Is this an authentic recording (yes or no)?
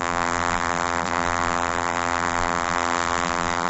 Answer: no